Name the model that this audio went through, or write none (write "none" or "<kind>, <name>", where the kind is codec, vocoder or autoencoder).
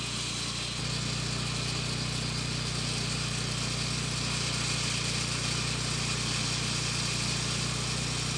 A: none